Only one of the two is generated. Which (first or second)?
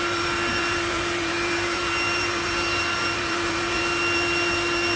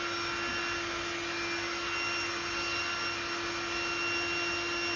first